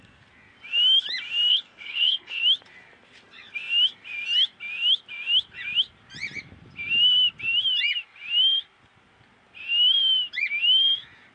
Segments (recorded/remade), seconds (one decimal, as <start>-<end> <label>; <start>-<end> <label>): 0.0-1.5 recorded; 1.5-2.4 remade; 2.4-11.3 recorded